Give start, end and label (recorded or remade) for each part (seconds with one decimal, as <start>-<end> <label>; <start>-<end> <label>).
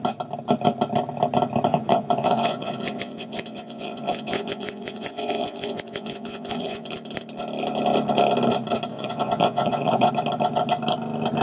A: 0.0-1.7 recorded; 1.7-6.9 remade; 6.9-8.9 recorded; 8.9-10.1 remade; 10.1-11.4 recorded